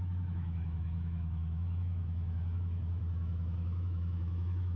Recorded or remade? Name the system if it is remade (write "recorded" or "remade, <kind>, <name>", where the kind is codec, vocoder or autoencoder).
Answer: remade, autoencoder, DAC-VAE